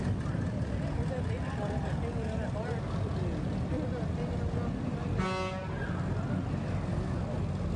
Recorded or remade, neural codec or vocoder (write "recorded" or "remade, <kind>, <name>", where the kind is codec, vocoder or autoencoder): recorded